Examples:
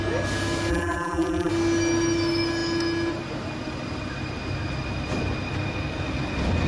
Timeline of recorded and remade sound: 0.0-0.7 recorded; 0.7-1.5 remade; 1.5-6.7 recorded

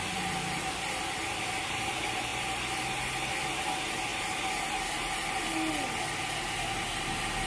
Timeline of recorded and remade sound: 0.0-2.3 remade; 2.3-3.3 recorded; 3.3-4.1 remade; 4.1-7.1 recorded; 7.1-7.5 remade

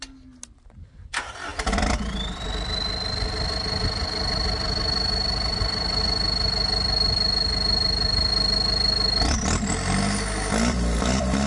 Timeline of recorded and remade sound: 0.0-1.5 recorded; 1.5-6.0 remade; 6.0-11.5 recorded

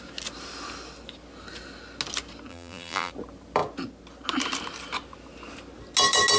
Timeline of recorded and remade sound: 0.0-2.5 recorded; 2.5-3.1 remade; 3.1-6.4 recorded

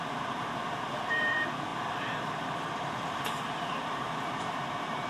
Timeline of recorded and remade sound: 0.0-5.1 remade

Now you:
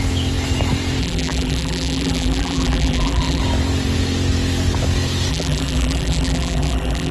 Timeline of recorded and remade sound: 0.0-1.0 recorded; 1.0-3.4 remade; 3.4-5.3 recorded; 5.3-7.1 remade

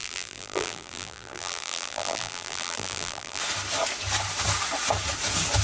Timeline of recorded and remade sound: 0.0-3.4 remade; 3.4-5.6 recorded

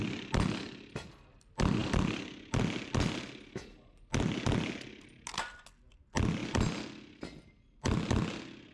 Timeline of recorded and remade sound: 0.0-1.8 recorded; 1.8-2.6 remade; 2.6-8.7 recorded